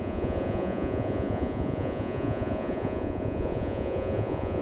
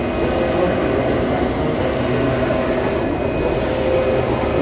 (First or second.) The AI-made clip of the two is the first